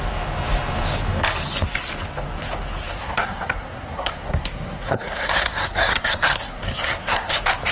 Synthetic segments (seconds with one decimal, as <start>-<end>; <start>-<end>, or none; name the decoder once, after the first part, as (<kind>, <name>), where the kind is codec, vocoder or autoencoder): 2.9-7.3 (codec, SNAC)

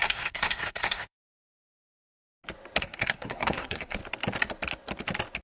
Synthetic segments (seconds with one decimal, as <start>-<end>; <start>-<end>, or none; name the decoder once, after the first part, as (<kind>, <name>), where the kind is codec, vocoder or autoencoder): 0.0-1.5 (codec, SNAC); 2.8-4.0